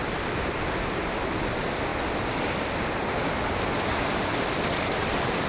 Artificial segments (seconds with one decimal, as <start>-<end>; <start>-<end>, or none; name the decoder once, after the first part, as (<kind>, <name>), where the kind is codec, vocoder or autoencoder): none